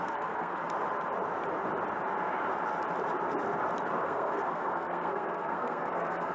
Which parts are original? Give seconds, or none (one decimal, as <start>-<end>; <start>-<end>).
0.6-4.0